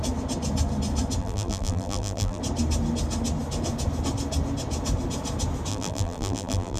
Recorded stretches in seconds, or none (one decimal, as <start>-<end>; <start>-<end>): 0.0-1.2; 2.4-5.7